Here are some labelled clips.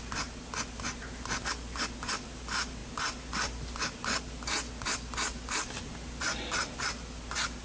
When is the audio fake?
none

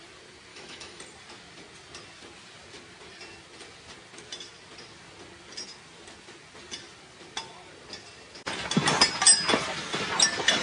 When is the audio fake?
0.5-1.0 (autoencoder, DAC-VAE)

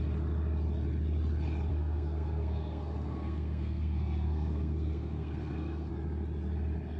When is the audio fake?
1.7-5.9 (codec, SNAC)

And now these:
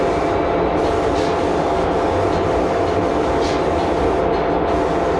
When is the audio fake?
none

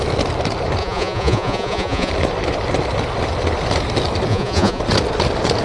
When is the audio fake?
0.8-2.1 (vocoder, Vocos); 4.3-4.8

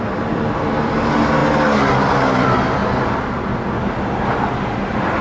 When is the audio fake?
0.0-1.4 (vocoder, BigVGAN v2); 1.9-2.8; 4.4-5.2

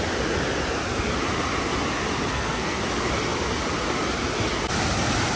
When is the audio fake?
2.3-2.8 (codec, SNAC)